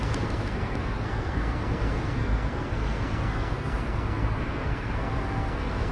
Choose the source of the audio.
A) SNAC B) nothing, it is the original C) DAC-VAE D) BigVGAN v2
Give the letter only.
A